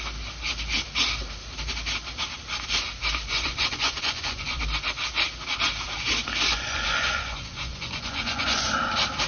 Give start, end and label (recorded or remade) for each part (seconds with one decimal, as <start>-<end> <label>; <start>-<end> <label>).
0.0-3.3 recorded; 3.3-4.6 remade; 4.6-6.5 recorded; 6.5-8.7 remade; 8.7-9.3 recorded